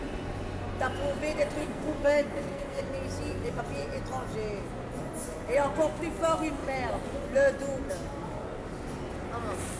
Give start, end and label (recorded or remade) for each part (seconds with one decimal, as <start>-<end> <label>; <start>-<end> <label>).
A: 0.0-1.6 recorded; 1.6-2.8 remade; 2.8-9.8 recorded